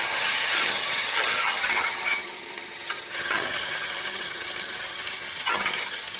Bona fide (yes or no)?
no